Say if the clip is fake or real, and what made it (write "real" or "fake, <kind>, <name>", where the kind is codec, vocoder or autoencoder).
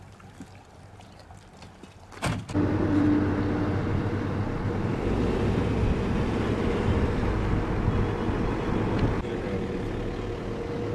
real